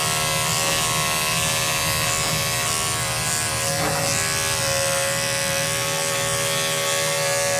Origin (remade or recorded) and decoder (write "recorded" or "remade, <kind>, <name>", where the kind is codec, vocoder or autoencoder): recorded